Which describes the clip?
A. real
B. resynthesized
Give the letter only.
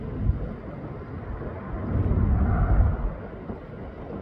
A